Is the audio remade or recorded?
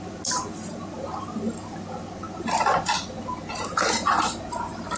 recorded